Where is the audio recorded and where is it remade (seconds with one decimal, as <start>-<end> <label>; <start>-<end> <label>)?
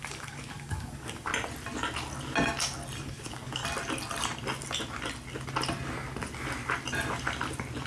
0.0-1.3 remade; 1.3-3.0 recorded; 3.0-3.6 remade; 3.6-7.9 recorded